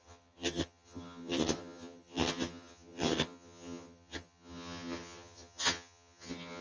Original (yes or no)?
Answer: no